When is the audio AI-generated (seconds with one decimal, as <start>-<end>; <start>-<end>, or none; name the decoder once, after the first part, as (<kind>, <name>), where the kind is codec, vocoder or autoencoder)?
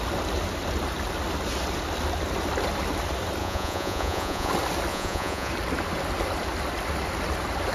3.4-4.5 (vocoder, Vocos); 4.9-5.5